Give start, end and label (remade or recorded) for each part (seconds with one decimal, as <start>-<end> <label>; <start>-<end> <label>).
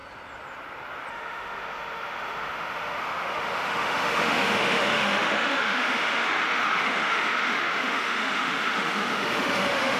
0.0-1.1 recorded; 1.1-10.0 remade